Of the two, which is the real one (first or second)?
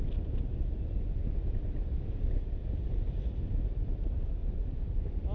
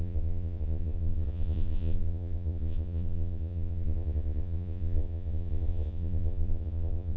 first